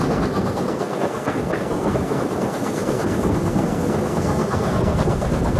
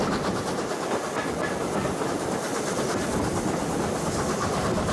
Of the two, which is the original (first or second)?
second